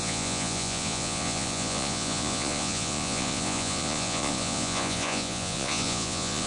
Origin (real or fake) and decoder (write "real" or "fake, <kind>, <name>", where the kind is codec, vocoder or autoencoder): fake, vocoder, Vocos